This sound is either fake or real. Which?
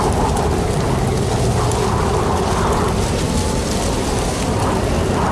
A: real